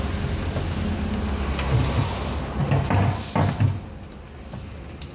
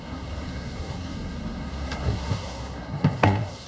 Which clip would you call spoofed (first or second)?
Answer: second